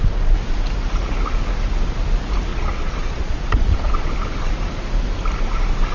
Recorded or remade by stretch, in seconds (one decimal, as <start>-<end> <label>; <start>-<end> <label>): 0.0-2.5 recorded; 2.5-4.0 remade; 4.0-5.9 recorded